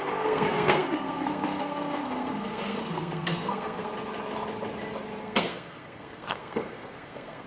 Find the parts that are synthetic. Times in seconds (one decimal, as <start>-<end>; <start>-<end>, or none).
0.0-3.9; 5.2-7.5